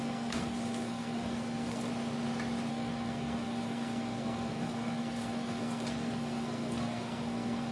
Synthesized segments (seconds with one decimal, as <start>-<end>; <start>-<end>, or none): 0.0-1.9; 2.7-7.7